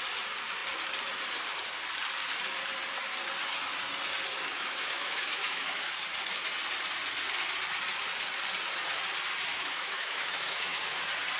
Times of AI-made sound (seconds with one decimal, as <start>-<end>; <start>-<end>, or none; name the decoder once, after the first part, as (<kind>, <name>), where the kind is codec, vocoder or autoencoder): 4.5-5.9 (autoencoder, DAC-VAE); 9.5-11.0